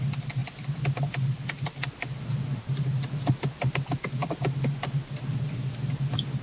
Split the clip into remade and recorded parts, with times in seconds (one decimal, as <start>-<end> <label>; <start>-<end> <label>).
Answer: 0.0-6.4 recorded